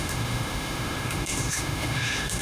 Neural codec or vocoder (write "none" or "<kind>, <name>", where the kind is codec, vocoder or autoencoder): autoencoder, DAC-VAE